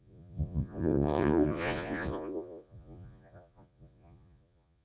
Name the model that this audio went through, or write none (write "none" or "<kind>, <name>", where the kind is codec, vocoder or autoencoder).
vocoder, Vocos